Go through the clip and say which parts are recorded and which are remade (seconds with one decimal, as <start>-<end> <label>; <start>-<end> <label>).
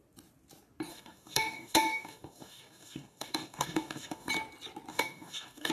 0.0-0.9 recorded; 0.9-4.3 remade; 4.3-4.9 recorded; 4.9-5.7 remade